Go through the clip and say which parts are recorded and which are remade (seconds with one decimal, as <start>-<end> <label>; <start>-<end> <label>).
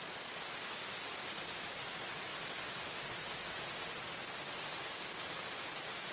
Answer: 0.0-6.1 recorded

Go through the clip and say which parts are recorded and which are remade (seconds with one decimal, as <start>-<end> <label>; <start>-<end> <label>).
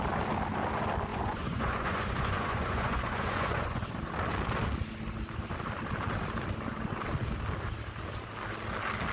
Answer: 0.0-1.1 recorded; 1.1-3.8 remade; 3.8-9.1 recorded